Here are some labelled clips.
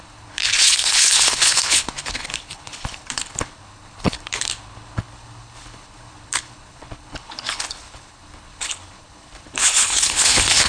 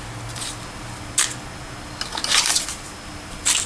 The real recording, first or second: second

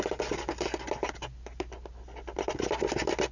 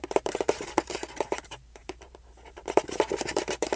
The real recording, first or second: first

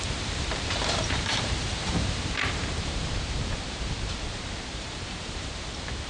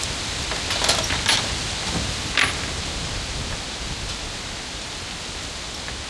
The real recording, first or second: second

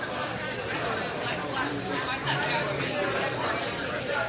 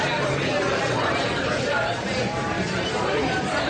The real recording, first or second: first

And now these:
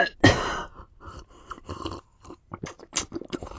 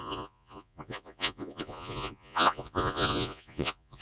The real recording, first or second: first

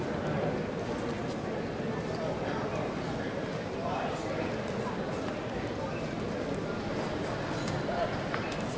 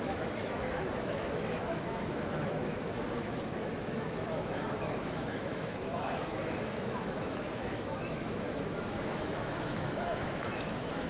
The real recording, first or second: first